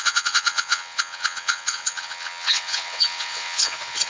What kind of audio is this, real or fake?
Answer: fake